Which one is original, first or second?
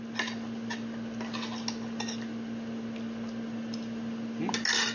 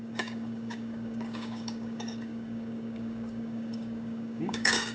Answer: first